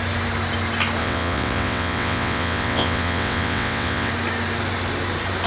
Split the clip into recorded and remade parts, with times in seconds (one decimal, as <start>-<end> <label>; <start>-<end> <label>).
0.0-1.0 recorded; 1.0-4.1 remade; 4.1-5.5 recorded